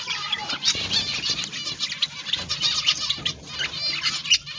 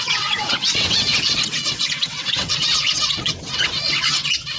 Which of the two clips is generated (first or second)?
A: second